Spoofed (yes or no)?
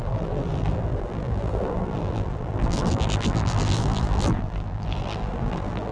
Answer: yes